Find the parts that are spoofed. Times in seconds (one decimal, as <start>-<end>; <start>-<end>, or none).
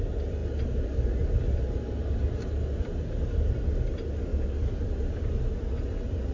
none